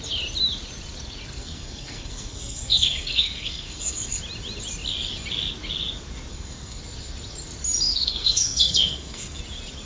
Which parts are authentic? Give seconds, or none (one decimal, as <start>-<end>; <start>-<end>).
0.0-1.4; 4.2-6.3; 6.8-7.9; 9.4-9.9